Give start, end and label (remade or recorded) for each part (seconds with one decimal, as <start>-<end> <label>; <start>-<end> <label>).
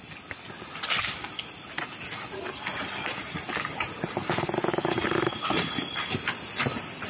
0.0-7.1 recorded